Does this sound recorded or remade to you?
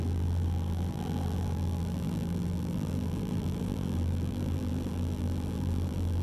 remade